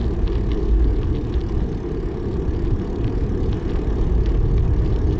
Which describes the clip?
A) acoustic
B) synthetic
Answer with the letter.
A